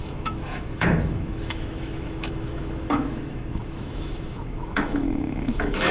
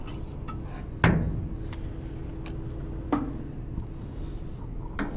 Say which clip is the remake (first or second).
first